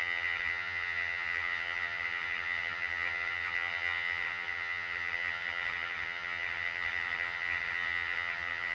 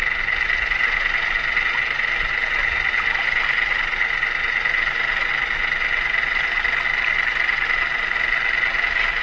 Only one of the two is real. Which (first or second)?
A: second